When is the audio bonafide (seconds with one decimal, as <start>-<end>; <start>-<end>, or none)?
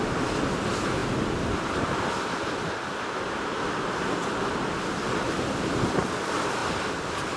0.0-7.4